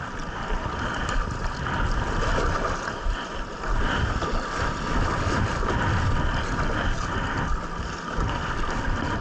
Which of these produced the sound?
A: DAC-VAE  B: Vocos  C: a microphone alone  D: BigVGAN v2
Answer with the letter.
C